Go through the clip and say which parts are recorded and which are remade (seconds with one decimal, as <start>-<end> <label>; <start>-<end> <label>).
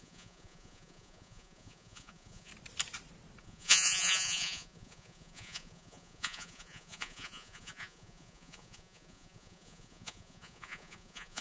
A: 0.0-2.5 remade; 2.5-3.4 recorded; 3.4-11.4 remade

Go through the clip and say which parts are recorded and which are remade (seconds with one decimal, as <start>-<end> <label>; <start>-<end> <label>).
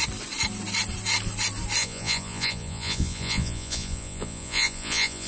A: 0.0-1.8 recorded; 1.8-5.3 remade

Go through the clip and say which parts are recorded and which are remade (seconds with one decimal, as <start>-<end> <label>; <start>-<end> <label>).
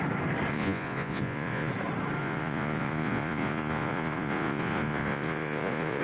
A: 0.0-0.5 recorded; 0.5-1.7 remade; 1.7-2.2 recorded; 2.2-6.0 remade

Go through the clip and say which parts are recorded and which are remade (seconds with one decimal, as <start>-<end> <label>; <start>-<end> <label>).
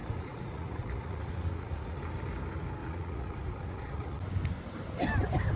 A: 0.0-2.0 remade; 2.0-2.8 recorded; 2.8-4.2 remade; 4.2-5.6 recorded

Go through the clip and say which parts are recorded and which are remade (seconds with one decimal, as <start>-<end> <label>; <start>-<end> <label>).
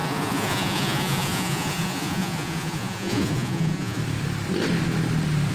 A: 0.0-4.0 remade; 4.0-5.5 recorded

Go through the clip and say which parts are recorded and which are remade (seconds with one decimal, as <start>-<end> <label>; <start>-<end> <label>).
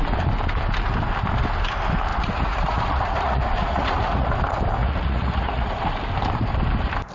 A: 0.0-2.1 recorded; 2.1-4.3 remade; 4.3-4.8 recorded; 4.8-5.9 remade; 5.9-7.1 recorded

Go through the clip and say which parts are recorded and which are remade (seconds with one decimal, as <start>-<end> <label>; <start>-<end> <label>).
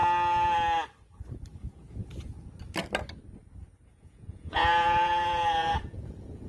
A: 0.0-3.9 recorded; 3.9-6.5 remade